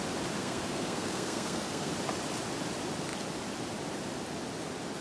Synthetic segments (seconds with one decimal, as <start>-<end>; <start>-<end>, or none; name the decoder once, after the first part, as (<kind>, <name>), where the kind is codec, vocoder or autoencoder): 0.4-1.9 (codec, SNAC)